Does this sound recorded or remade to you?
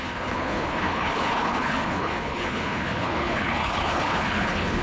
remade